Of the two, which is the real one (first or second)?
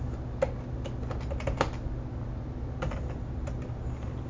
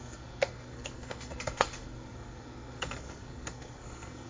first